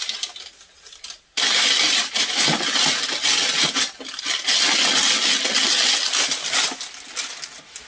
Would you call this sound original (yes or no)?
yes